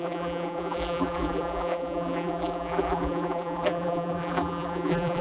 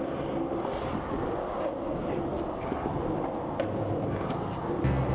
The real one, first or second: second